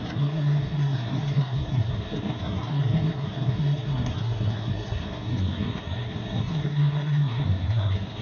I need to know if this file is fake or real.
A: fake